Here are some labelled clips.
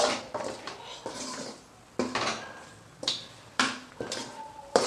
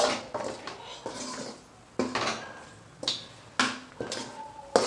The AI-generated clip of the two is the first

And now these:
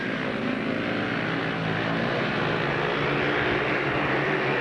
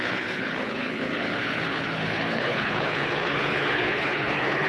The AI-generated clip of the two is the second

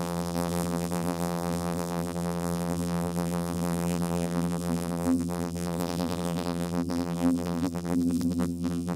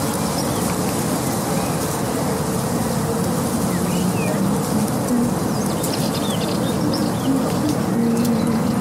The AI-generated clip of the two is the first